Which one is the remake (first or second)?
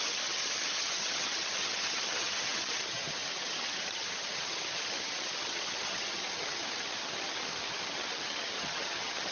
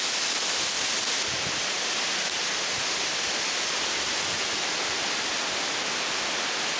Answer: first